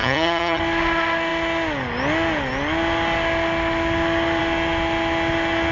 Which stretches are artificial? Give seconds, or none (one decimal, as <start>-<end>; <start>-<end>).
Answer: 0.0-0.6